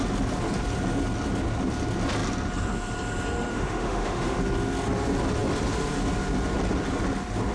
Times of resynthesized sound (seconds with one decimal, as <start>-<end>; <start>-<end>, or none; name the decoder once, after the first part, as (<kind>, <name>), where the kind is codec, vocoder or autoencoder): 3.5-4.4 (autoencoder, DAC-VAE)